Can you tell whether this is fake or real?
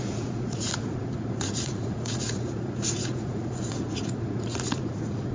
fake